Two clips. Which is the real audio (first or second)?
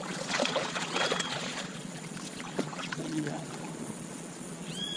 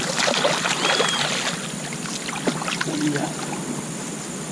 second